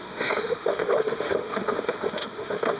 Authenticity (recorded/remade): remade